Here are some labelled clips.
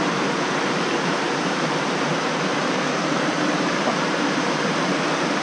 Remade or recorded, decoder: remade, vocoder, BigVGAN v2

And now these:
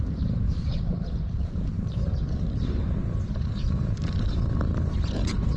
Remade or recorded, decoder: remade, vocoder, BigVGAN v2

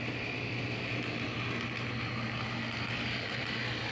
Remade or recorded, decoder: recorded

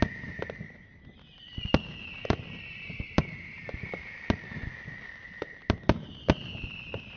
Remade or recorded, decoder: remade, vocoder, BigVGAN v2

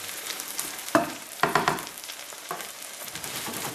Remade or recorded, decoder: remade, vocoder, BigVGAN v2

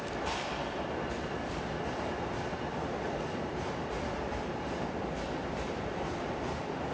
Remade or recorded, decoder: remade, vocoder, BigVGAN v2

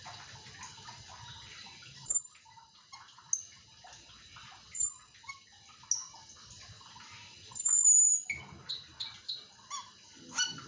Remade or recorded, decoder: recorded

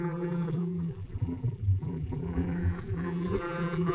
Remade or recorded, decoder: remade, vocoder, BigVGAN v2